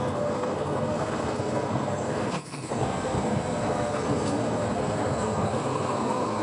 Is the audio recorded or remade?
remade